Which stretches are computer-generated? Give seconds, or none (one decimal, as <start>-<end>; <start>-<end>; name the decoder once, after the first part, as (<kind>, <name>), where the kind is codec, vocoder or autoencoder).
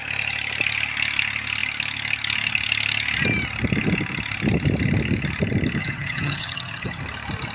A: 5.8-7.0 (vocoder, HiFi-GAN)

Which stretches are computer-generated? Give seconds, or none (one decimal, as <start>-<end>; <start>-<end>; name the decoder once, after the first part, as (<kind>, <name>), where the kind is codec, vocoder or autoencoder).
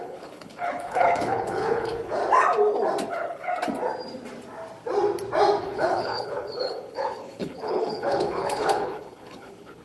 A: 0.0-2.2 (codec, HILCodec); 3.1-3.5; 5.6-9.8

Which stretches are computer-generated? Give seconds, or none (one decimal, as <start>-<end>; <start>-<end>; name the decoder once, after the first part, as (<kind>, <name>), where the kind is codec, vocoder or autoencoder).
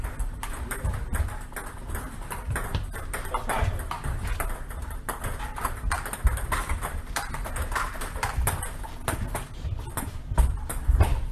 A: none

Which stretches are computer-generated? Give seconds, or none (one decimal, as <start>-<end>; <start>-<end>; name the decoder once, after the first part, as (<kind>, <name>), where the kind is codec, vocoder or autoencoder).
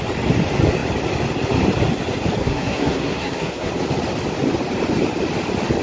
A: 2.4-3.7 (codec, SNAC)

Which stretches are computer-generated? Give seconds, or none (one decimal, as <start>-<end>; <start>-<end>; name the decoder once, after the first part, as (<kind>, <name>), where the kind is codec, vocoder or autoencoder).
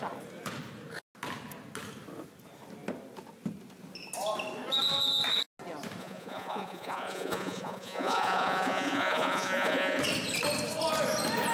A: 6.0-10.0 (vocoder, Vocos)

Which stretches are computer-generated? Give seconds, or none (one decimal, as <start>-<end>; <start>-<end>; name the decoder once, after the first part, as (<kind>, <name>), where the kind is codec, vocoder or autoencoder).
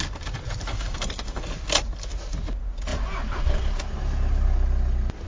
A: 0.7-1.4 (codec, SNAC)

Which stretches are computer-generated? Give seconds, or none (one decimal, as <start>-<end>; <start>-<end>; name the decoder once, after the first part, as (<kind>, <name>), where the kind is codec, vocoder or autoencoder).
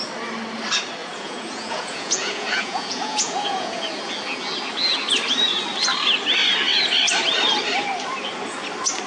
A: 1.0-4.0 (vocoder, Vocos)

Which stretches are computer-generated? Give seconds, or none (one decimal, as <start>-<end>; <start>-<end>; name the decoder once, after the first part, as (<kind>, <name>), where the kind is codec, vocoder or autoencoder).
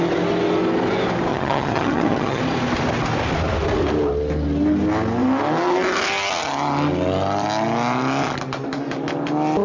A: 1.3-2.4 (vocoder, HiFi-GAN)